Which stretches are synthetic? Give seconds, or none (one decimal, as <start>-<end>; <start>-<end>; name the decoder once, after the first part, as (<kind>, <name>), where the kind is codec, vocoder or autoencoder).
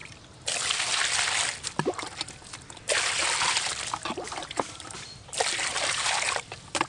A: 2.5-6.9 (vocoder, BigVGAN v2)